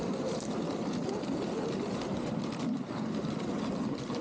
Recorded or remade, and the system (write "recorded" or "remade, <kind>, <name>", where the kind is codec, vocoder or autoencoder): recorded